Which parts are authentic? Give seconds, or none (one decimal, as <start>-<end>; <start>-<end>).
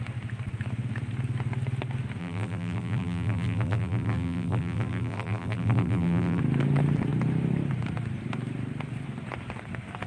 0.0-2.2; 6.4-10.1